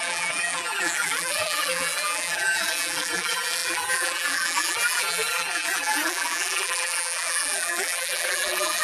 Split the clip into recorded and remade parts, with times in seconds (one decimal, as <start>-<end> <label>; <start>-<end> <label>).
0.0-8.8 remade